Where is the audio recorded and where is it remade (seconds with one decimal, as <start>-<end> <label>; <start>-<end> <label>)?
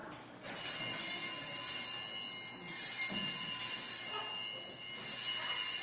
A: 0.0-0.8 remade; 0.8-3.6 recorded; 3.6-4.2 remade; 4.2-5.8 recorded